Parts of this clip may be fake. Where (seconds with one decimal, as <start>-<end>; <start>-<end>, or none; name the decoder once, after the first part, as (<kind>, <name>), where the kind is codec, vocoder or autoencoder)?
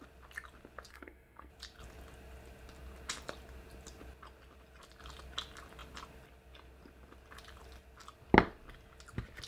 0.9-1.5 (codec, SNAC)